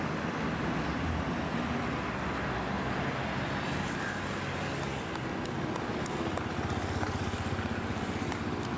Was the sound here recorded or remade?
recorded